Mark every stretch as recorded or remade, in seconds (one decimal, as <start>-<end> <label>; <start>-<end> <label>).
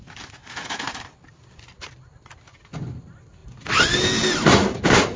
0.0-5.2 recorded